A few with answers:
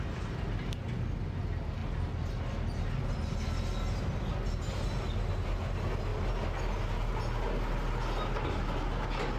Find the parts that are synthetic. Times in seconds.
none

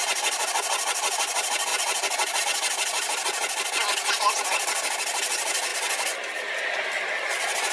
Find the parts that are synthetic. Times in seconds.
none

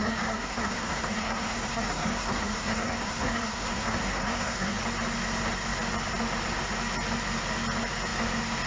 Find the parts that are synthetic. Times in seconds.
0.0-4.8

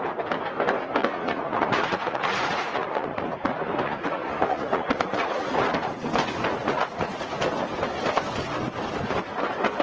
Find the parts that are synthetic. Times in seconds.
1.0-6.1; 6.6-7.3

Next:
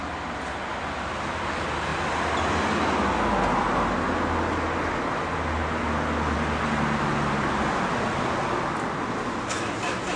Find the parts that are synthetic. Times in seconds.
none

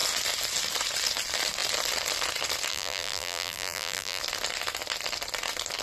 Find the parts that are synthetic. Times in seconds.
2.7-4.2